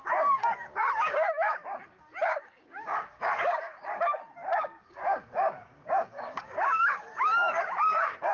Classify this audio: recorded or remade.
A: remade